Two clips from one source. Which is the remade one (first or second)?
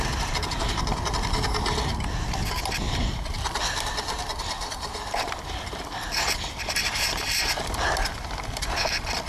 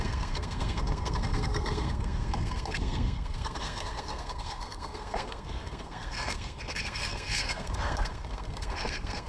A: second